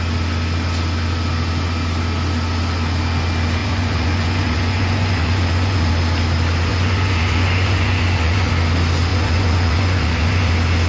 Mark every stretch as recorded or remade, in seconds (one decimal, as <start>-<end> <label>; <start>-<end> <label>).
0.0-3.6 recorded; 3.6-5.9 remade; 5.9-6.7 recorded; 6.7-8.5 remade; 8.5-9.1 recorded; 9.1-10.5 remade; 10.5-10.9 recorded